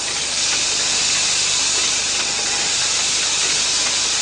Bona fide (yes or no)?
yes